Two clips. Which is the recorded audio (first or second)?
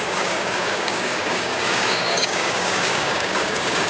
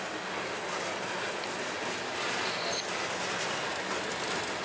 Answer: second